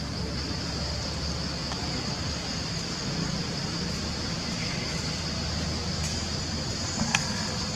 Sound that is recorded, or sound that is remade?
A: recorded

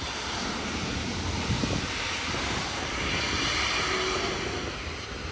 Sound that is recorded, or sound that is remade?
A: remade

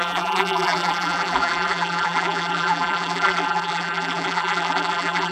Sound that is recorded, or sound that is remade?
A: remade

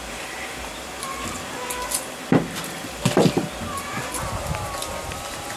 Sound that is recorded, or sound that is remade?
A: recorded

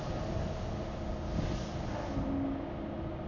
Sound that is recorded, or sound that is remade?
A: recorded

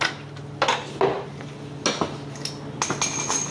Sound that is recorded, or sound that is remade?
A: recorded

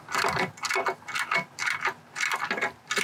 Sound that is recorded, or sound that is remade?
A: recorded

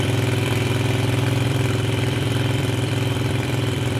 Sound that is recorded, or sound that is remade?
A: remade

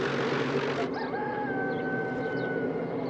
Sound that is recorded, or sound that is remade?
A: recorded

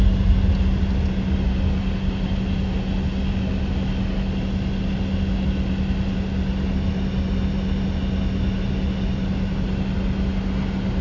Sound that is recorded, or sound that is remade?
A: recorded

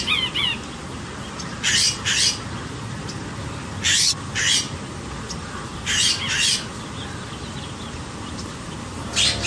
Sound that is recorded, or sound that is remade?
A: recorded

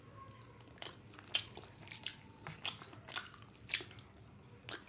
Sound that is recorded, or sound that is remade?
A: recorded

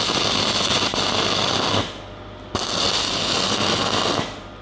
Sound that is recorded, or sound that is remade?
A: recorded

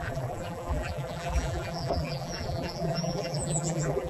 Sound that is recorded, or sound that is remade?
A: remade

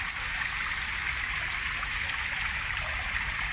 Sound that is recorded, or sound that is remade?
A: recorded